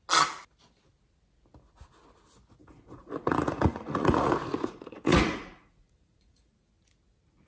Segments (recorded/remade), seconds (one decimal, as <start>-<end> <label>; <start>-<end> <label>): 0.0-2.6 recorded; 2.6-6.5 remade; 6.5-7.5 recorded